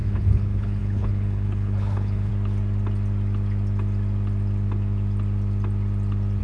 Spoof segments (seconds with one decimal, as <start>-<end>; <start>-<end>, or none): 0.0-2.3